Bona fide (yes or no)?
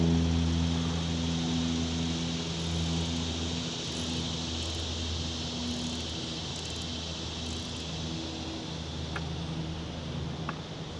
yes